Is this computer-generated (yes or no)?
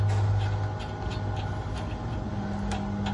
no